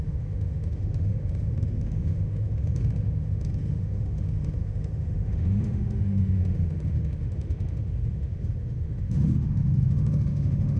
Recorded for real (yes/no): no